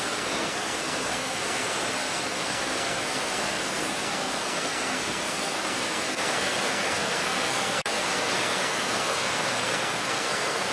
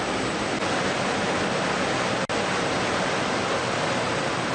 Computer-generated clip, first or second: first